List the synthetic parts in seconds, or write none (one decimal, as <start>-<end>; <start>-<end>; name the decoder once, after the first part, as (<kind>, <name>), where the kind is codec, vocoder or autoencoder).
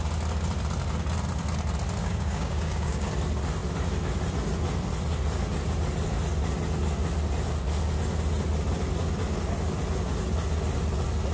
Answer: 2.0-3.1 (codec, DAC)